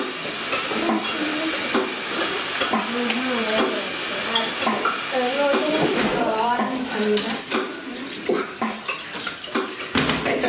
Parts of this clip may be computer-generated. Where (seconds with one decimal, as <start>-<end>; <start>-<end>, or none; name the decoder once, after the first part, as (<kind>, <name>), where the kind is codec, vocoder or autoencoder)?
5.9-9.5 (vocoder, BigVGAN v2)